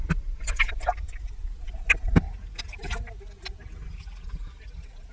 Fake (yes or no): no